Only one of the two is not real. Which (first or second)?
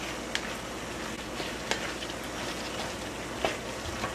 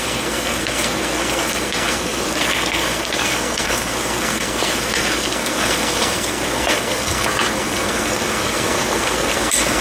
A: second